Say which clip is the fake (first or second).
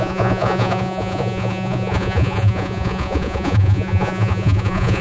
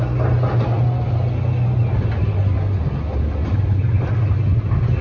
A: first